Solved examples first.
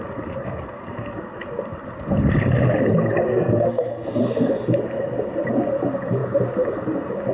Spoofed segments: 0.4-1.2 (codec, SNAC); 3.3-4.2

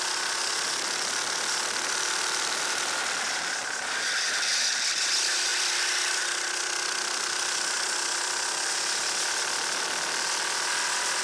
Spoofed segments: none

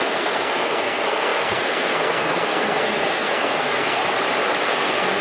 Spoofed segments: 0.0-4.0 (codec, SNAC); 4.6-5.2

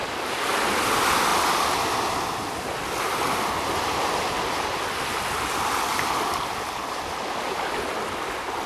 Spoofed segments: none